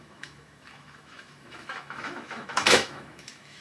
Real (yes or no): no